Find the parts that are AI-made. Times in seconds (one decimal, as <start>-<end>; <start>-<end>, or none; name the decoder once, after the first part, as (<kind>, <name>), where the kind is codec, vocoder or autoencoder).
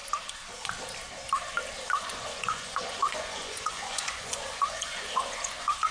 2.0-5.9 (vocoder, Vocos)